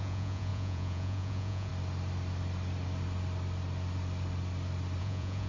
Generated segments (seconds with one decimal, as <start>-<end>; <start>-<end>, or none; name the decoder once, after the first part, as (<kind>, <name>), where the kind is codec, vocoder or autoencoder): 0.0-1.7 (vocoder, Vocos); 5.0-5.5